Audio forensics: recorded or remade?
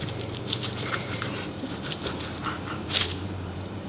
remade